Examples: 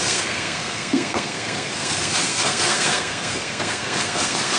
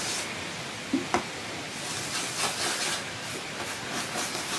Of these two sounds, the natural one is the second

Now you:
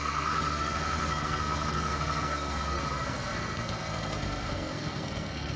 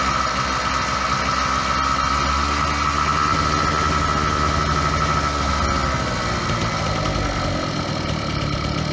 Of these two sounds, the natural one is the second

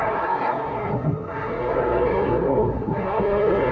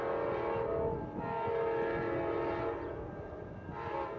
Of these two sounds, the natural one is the second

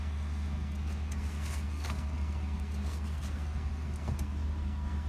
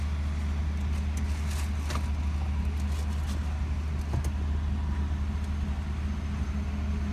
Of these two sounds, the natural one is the second